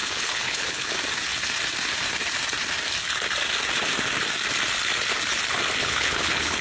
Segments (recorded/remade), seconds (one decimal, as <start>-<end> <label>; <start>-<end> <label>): 0.0-0.9 remade; 0.9-5.8 recorded; 5.8-6.6 remade